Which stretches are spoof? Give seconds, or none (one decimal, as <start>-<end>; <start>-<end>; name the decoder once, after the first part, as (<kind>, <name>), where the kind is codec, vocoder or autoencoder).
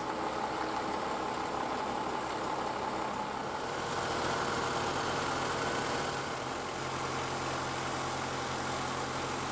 none